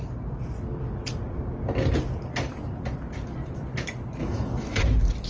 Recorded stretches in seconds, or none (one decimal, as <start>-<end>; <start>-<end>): 0.0-4.2; 4.8-5.3